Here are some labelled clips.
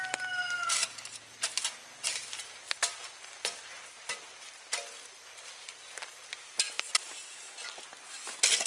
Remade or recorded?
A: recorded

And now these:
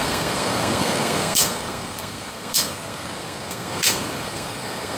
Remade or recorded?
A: remade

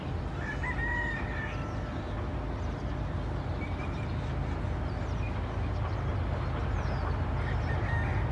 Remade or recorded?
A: recorded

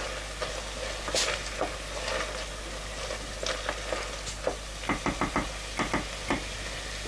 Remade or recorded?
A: recorded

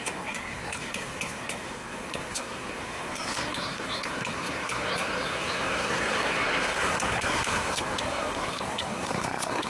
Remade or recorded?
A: remade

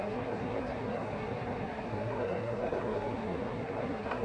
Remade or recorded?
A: remade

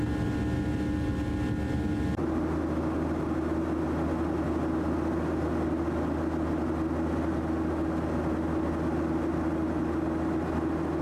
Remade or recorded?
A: recorded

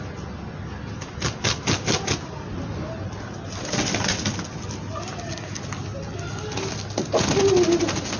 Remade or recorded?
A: recorded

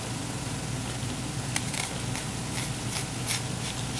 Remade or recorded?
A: recorded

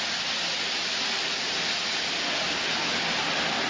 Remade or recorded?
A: recorded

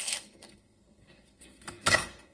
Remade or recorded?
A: remade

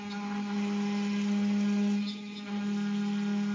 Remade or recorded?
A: recorded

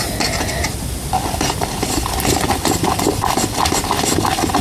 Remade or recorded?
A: recorded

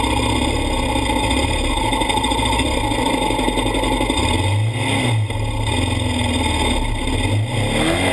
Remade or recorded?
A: recorded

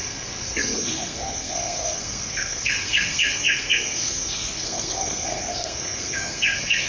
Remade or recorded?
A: remade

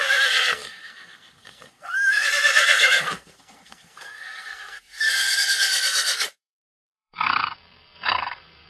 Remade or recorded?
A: remade